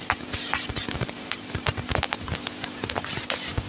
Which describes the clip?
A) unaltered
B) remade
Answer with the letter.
B